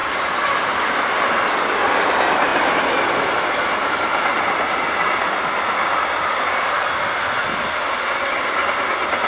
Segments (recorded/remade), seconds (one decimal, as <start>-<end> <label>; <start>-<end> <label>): 0.0-9.3 recorded